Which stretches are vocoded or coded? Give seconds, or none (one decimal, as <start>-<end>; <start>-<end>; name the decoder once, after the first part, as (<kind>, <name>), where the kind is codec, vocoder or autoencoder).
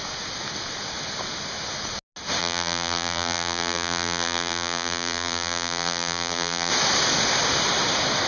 2.4-6.7 (vocoder, BigVGAN v2)